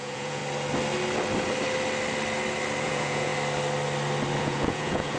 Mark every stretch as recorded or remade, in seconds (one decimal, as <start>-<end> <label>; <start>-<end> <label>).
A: 0.0-0.4 remade; 0.4-2.8 recorded; 2.8-3.3 remade; 3.3-4.4 recorded; 4.4-5.2 remade